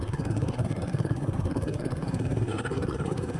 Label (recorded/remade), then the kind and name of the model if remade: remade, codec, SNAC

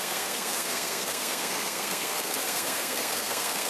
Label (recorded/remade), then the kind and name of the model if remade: remade, codec, SNAC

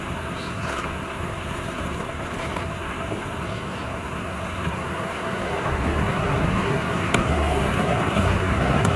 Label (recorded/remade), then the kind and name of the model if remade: remade, codec, SNAC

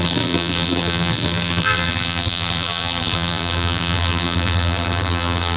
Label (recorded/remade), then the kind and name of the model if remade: remade, vocoder, BigVGAN v2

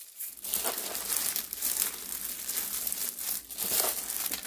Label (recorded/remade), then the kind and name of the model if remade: recorded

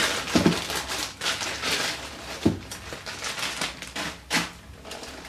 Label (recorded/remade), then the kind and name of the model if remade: recorded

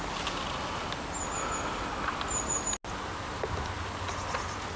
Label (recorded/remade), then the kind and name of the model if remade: recorded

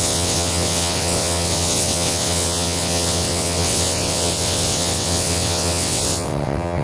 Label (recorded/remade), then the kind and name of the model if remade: remade, vocoder, WaveNeXt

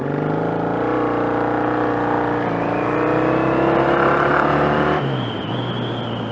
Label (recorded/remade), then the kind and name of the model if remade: recorded